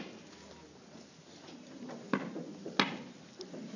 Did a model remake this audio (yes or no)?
no